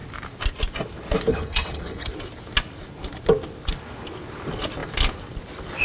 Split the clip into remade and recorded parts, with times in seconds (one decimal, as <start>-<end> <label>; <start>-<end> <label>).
0.0-1.3 recorded; 1.3-2.1 remade; 2.1-5.8 recorded